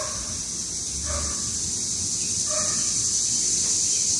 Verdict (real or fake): real